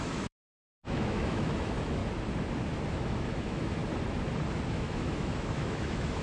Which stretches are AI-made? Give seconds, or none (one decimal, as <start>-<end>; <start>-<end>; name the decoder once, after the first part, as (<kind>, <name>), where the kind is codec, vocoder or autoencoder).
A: 0.0-2.0 (autoencoder, DAC-VAE); 2.9-3.8; 4.7-6.2